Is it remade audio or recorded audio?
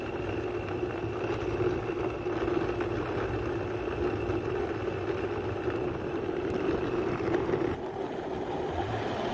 recorded